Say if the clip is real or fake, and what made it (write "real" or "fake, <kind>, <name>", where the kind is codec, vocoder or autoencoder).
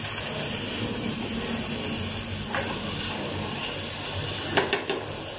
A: real